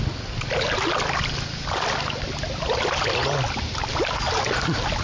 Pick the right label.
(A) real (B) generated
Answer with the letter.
A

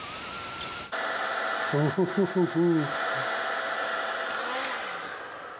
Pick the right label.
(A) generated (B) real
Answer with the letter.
B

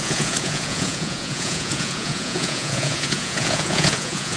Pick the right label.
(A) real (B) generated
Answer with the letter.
B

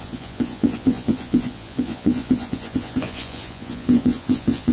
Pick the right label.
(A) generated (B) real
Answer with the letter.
A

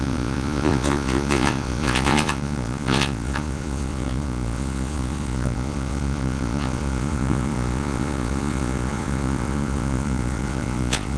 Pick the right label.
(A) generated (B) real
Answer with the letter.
A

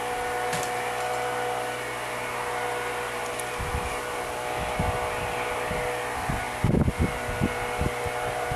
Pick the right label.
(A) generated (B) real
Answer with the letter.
B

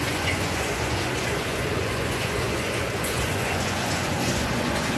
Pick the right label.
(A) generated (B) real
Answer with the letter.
A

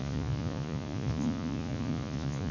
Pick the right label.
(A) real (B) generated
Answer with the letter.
B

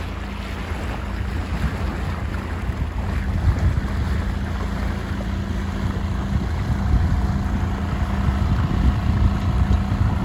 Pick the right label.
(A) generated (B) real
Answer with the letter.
B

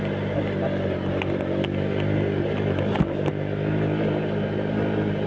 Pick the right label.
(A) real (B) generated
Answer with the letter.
A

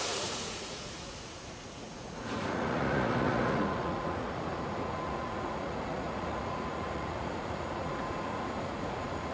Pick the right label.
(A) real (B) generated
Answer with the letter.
B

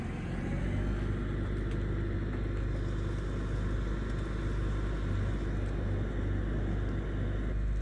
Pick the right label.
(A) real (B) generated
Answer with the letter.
A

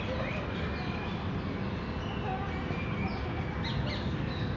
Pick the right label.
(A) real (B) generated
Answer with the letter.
A